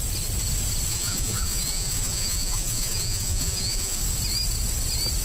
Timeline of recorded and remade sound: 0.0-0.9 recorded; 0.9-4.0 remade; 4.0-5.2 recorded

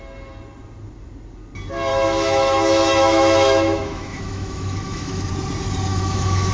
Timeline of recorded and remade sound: 0.0-1.9 recorded; 1.9-5.3 remade; 5.3-5.9 recorded; 5.9-6.5 remade

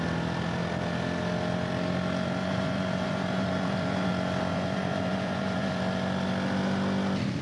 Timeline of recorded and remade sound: 0.0-2.4 recorded; 2.4-4.1 remade; 4.1-4.5 recorded; 4.5-5.8 remade; 5.8-7.4 recorded

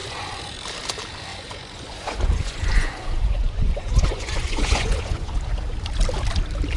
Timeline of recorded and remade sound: 0.0-0.6 remade; 0.6-1.3 recorded; 1.3-5.4 remade; 5.4-6.8 recorded

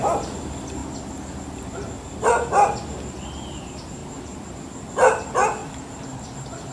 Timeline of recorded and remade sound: 0.0-4.0 recorded; 4.0-4.5 remade; 4.5-5.6 recorded; 5.6-6.2 remade; 6.2-6.7 recorded

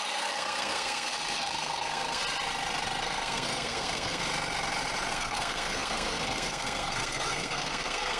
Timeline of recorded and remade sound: 0.0-2.2 remade; 2.2-3.0 recorded; 3.0-4.2 remade; 4.2-5.1 recorded; 5.1-8.2 remade